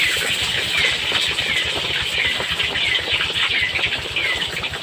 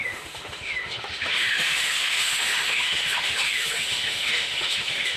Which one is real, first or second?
first